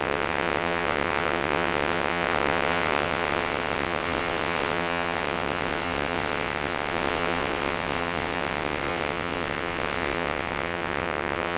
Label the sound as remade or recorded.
remade